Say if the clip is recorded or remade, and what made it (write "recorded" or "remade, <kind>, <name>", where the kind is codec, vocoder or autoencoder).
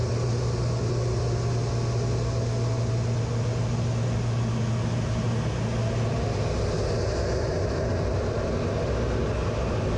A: recorded